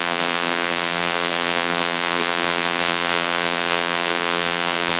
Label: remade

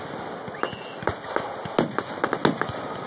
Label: recorded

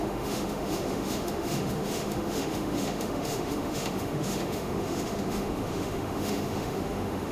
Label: remade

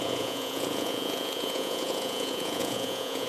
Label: remade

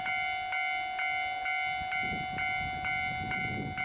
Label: recorded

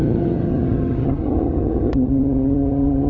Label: remade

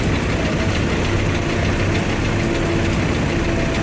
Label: recorded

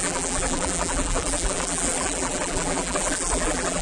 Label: remade